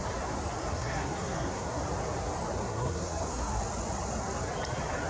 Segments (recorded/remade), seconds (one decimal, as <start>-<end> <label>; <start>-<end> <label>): 0.0-0.6 recorded; 0.6-1.8 remade; 1.8-2.6 recorded; 2.6-3.6 remade; 3.6-5.1 recorded

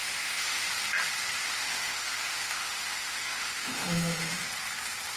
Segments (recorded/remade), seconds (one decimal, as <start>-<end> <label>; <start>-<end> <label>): 0.0-0.7 remade; 0.7-1.4 recorded; 1.4-4.5 remade; 4.5-5.2 recorded

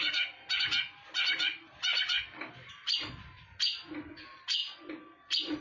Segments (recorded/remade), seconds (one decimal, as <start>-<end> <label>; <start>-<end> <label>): 0.0-5.6 recorded

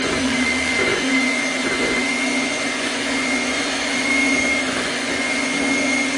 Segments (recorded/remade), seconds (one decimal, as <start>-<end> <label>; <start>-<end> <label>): 0.0-6.2 remade

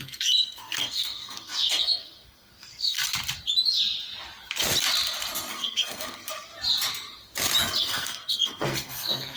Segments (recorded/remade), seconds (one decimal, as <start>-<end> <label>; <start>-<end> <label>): 0.0-3.0 remade; 3.0-5.5 recorded; 5.5-6.5 remade; 6.5-7.8 recorded; 7.8-9.4 remade

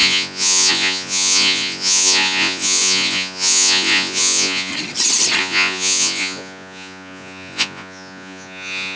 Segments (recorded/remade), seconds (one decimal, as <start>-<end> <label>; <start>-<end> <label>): 0.0-4.7 remade; 4.7-5.4 recorded; 5.4-9.0 remade

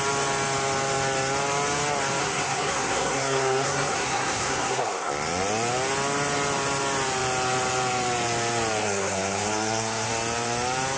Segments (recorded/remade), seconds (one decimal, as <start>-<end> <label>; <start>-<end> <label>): 0.0-2.2 recorded; 2.2-5.1 remade; 5.1-8.8 recorded; 8.8-10.1 remade; 10.1-11.0 recorded

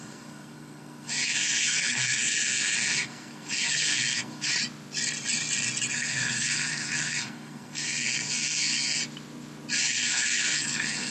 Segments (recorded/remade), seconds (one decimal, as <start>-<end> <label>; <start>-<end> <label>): 0.0-4.5 remade; 4.5-5.9 recorded; 5.9-9.0 remade; 9.0-9.8 recorded; 9.8-11.1 remade